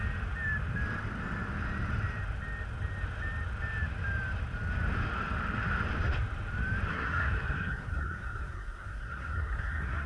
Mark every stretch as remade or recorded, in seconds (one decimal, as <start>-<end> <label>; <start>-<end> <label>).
0.0-6.9 recorded; 6.9-10.1 remade